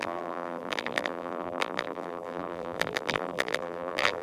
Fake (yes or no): yes